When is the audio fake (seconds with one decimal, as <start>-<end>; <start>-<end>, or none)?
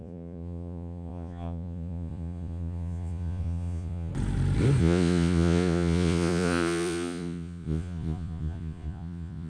0.0-4.1; 4.8-9.5